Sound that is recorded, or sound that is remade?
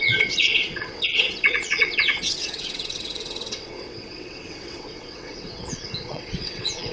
remade